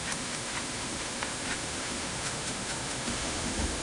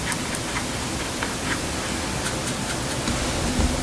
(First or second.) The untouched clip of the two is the second